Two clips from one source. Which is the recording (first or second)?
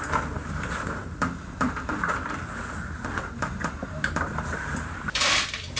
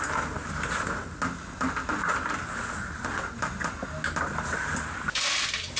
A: second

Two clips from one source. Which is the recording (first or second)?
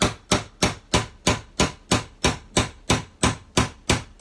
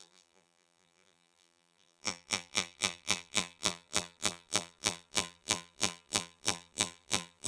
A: first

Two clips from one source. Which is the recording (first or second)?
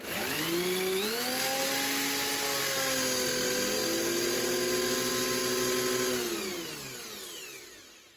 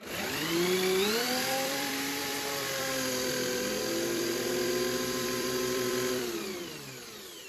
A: first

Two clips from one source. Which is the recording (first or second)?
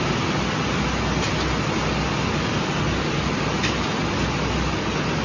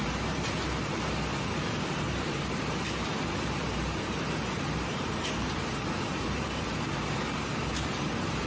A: first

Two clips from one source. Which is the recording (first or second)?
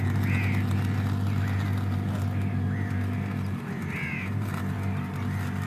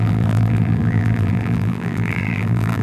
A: first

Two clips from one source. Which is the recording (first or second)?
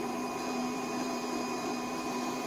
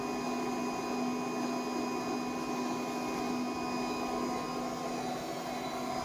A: second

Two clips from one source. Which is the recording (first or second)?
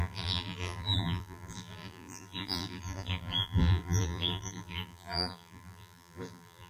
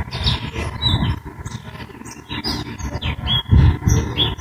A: second